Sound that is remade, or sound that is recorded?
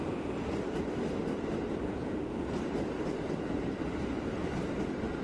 recorded